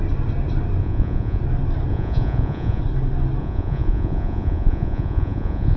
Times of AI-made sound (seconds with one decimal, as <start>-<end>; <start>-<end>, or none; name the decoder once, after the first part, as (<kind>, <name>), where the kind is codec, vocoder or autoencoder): 0.8-1.4 (vocoder, Vocos); 1.9-2.8; 3.4-5.8

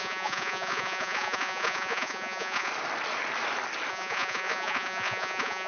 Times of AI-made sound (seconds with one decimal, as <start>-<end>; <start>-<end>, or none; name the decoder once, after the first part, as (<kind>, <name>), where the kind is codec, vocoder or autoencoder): 0.0-2.7 (vocoder, Vocos); 3.9-5.7

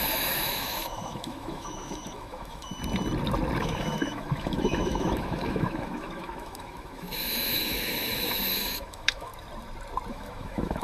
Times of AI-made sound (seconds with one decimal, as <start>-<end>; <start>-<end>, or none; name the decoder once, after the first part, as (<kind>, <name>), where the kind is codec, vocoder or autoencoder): 0.0-2.7 (autoencoder, DAC-VAE); 3.6-9.3; 10.1-10.8

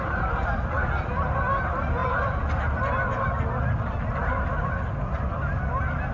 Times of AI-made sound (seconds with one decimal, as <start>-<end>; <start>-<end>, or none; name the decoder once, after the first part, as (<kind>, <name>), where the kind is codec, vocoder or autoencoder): none

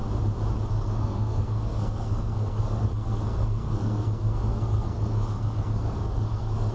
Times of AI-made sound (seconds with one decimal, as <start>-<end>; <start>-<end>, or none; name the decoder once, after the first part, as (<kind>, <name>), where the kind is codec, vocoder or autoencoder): 0.7-6.7 (codec, SNAC)

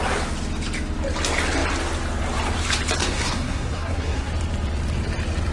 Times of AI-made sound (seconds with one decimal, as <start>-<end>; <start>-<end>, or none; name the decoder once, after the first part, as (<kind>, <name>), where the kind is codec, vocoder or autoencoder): 3.0-4.3 (codec, SNAC)